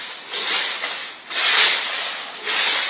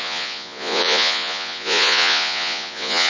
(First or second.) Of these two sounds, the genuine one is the first